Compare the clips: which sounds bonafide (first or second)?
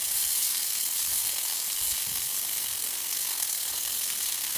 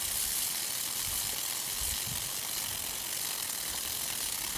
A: second